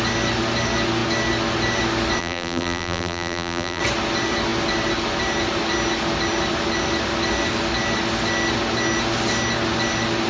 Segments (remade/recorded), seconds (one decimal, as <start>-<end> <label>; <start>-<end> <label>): 0.0-2.2 recorded; 2.2-3.8 remade; 3.8-10.3 recorded